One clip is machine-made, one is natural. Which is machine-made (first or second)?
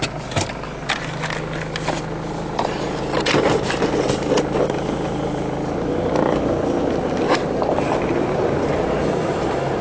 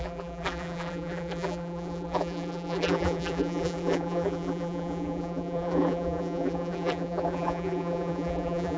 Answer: second